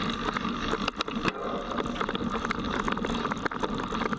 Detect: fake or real real